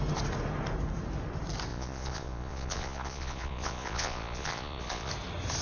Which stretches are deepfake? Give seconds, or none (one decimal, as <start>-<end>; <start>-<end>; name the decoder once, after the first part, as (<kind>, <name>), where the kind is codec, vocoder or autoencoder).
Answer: 1.7-5.1 (vocoder, Vocos)